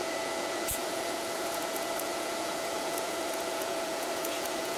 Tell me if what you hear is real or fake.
fake